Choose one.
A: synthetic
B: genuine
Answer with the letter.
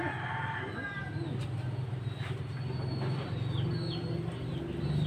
B